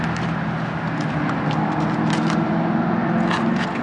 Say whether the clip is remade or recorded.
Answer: recorded